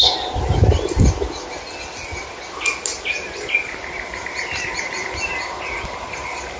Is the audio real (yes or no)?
yes